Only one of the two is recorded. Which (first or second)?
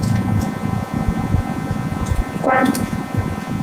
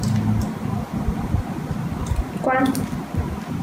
second